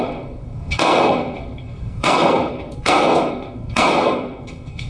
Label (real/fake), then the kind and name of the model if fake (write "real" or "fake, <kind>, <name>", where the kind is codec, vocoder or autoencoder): fake, codec, SNAC